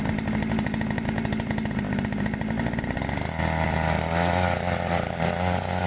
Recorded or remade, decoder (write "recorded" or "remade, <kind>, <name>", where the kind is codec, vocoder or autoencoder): recorded